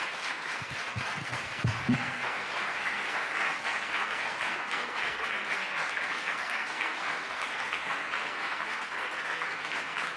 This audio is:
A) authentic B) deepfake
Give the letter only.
B